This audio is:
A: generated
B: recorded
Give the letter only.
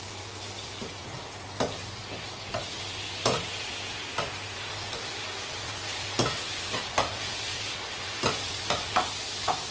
B